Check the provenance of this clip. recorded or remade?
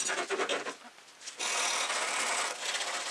recorded